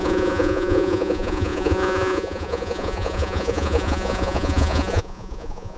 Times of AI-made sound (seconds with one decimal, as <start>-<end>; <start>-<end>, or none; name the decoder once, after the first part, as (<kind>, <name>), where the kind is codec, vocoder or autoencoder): 0.0-5.8 (vocoder, Vocos)